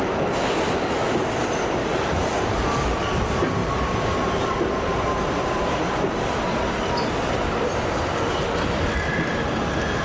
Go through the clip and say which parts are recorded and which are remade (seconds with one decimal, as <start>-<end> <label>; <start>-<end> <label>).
0.0-1.8 recorded; 1.8-2.8 remade; 2.8-10.0 recorded